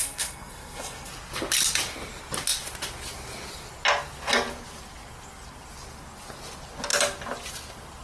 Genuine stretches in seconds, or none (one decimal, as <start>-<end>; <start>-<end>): 1.1-8.0